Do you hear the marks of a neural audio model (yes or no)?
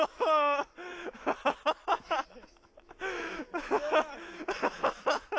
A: yes